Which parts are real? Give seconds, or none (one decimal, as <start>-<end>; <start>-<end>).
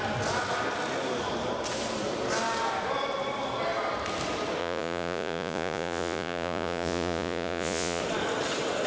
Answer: 0.0-4.6; 8.0-8.9